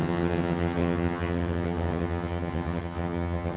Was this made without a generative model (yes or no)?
no